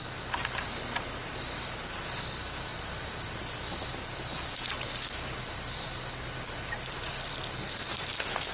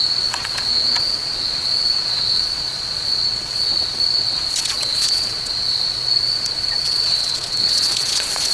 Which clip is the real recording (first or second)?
first